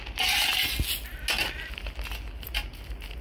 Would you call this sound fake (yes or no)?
no